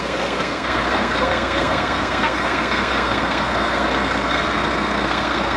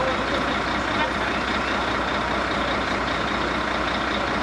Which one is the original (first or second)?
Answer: second